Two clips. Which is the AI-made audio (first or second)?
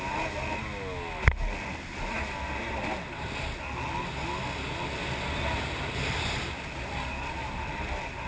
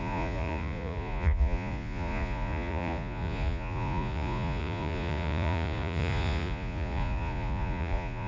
second